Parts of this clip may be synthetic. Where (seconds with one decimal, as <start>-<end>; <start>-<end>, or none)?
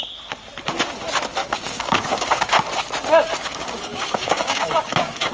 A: 1.4-2.6; 3.4-5.3